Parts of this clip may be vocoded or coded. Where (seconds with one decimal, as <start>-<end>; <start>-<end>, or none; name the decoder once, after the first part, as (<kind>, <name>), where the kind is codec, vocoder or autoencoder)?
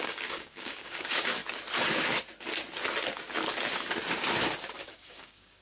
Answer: 0.0-1.4 (codec, DAC); 4.8-5.6